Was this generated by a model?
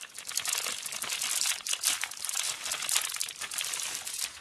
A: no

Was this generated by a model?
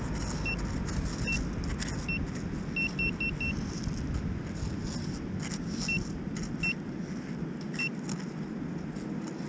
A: no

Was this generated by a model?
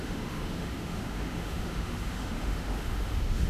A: yes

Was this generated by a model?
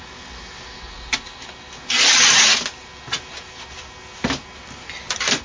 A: no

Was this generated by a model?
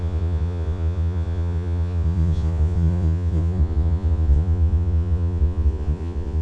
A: yes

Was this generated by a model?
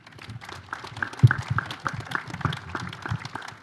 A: no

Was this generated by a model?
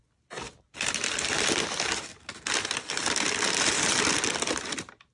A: no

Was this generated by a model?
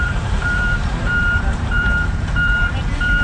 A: yes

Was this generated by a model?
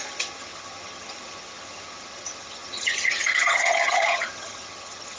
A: yes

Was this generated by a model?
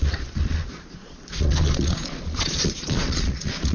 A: yes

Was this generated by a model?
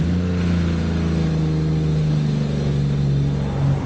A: no